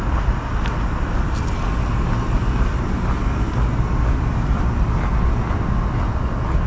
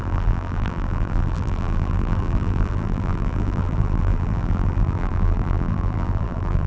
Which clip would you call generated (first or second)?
second